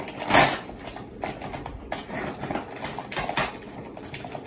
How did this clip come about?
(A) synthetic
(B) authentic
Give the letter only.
B